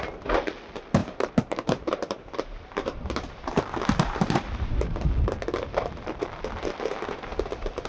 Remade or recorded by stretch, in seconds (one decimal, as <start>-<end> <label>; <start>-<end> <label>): 0.0-1.0 recorded; 1.0-5.1 remade; 5.1-7.9 recorded